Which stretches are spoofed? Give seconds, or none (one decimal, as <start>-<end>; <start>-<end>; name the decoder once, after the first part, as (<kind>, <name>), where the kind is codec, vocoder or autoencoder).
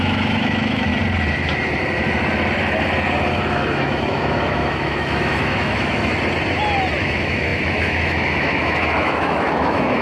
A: 0.0-0.9 (autoencoder, DAC-VAE); 3.5-6.1; 7.0-10.0